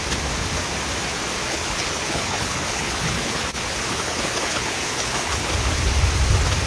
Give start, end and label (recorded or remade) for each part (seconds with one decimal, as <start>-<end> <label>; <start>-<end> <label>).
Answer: 0.0-1.5 recorded; 1.5-5.5 remade; 5.5-6.7 recorded